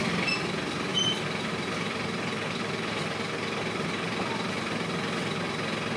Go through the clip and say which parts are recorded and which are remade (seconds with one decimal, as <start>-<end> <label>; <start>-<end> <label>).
0.0-0.9 recorded; 0.9-4.5 remade; 4.5-6.0 recorded